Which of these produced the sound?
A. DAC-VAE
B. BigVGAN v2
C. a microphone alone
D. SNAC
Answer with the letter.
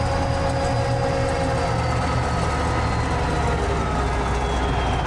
C